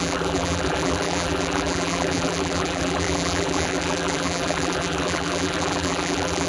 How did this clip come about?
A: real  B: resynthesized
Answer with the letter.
B